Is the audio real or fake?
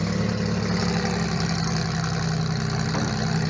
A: real